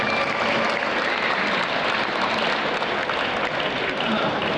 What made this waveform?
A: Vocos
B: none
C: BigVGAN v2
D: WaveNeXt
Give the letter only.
B